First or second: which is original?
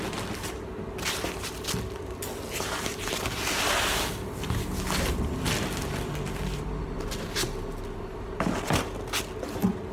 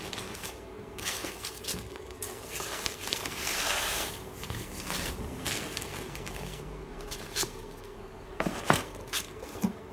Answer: first